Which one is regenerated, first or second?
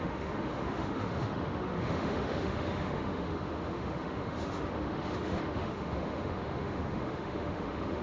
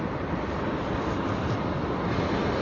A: first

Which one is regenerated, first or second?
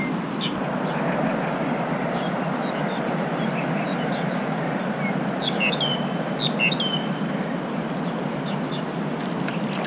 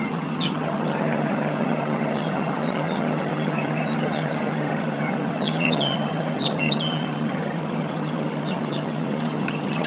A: second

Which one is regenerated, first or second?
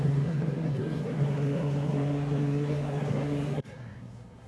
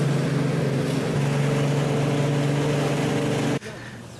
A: first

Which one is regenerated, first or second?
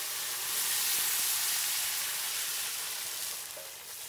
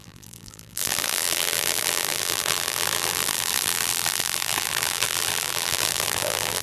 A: second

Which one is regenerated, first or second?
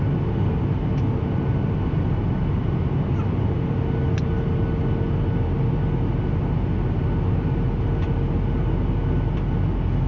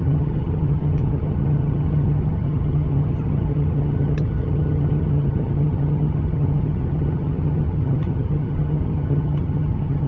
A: second